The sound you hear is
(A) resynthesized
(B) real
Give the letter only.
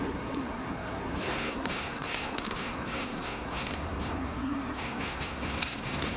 A